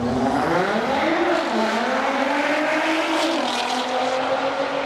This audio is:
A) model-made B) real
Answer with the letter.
B